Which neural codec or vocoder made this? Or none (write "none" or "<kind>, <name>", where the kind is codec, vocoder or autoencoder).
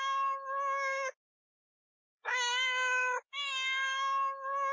codec, DAC